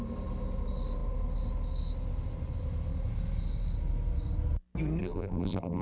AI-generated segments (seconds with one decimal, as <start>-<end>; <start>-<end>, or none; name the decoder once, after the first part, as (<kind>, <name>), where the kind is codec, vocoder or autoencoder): 5.0-5.8 (vocoder, BigVGAN v2)

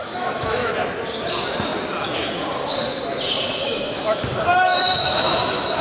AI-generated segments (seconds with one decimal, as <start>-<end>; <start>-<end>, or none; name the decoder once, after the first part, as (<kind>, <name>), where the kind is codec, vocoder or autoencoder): 0.0-0.7 (autoencoder, DAC-VAE); 3.6-5.8